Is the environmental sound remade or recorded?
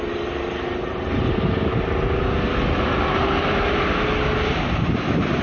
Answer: recorded